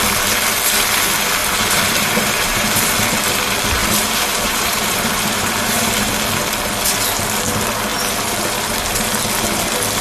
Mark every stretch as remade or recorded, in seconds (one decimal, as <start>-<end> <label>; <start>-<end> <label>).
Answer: 0.0-1.4 recorded; 1.4-2.8 remade; 2.8-3.8 recorded; 3.8-6.1 remade; 6.1-10.0 recorded